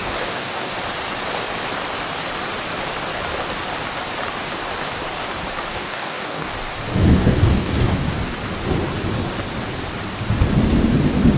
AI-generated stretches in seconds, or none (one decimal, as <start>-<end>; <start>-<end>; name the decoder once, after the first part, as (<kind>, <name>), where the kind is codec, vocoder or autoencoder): 0.0-0.7 (codec, DAC); 5.7-6.5; 6.9-8.1